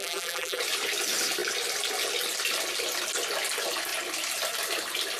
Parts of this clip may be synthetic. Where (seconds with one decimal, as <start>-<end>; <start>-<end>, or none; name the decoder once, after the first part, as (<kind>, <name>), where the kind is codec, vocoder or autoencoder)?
0.0-0.6 (vocoder, BigVGAN v2)